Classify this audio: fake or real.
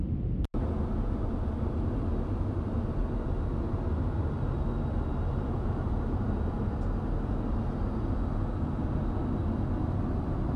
real